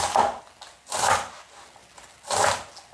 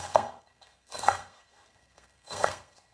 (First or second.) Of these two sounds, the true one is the first